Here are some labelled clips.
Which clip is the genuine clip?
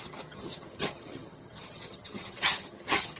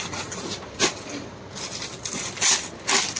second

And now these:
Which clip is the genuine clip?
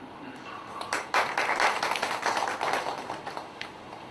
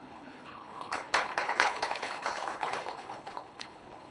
first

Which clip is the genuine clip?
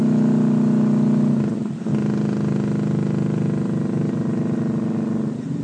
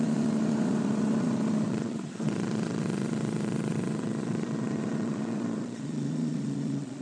first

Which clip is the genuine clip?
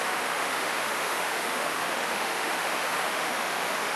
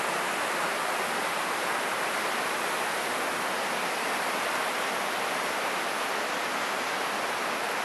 second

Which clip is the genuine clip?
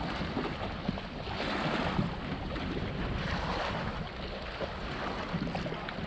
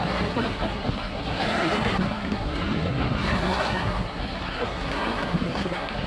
first